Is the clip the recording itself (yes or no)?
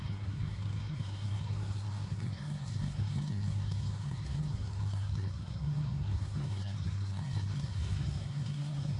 no